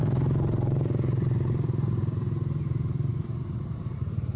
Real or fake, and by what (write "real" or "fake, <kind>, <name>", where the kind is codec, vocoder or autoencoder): fake, vocoder, BigVGAN v2